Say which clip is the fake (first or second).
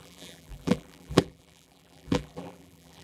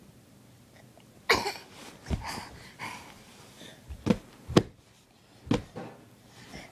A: first